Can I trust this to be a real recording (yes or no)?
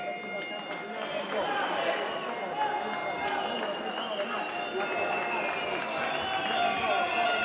yes